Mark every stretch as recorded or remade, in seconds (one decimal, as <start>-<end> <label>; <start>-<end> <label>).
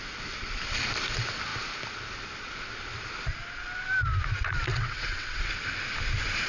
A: 0.0-4.7 recorded; 4.7-5.4 remade; 5.4-6.5 recorded